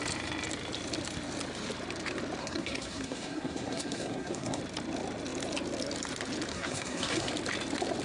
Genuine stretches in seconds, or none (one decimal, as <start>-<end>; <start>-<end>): 0.0-2.4; 4.6-6.5; 7.3-8.0